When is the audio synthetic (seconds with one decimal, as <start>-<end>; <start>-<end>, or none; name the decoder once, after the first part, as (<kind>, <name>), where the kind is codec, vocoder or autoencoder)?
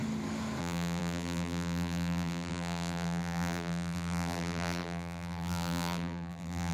0.6-6.7 (vocoder, BigVGAN v2)